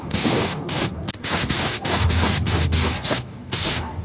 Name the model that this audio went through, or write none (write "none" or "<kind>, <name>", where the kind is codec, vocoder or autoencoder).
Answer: codec, DAC